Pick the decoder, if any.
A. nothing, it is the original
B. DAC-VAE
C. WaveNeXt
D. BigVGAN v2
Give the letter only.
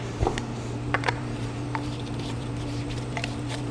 D